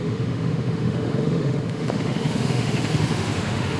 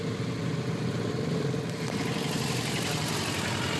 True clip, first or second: second